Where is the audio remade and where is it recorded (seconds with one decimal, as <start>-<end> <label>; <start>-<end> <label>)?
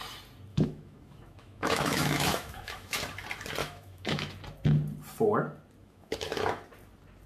0.0-0.5 recorded; 0.5-3.0 remade; 3.0-3.6 recorded; 3.6-4.3 remade; 4.3-5.8 recorded; 5.8-6.6 remade; 6.6-7.3 recorded